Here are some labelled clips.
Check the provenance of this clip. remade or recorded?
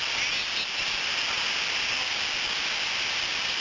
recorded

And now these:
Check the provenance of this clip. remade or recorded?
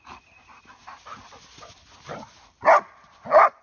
recorded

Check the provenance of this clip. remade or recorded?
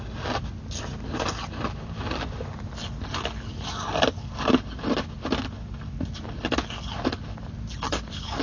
recorded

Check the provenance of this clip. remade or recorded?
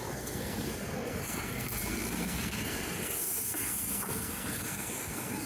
remade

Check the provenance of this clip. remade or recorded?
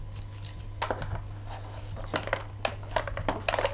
recorded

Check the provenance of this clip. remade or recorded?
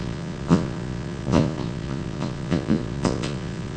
remade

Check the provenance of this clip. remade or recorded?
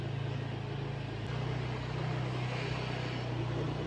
recorded